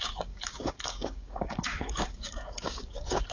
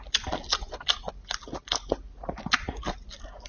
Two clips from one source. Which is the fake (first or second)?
first